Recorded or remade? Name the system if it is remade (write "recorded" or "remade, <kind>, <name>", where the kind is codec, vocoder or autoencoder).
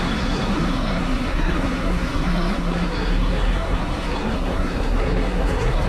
remade, codec, SNAC